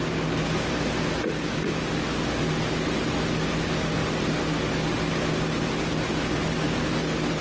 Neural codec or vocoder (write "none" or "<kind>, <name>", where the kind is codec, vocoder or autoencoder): none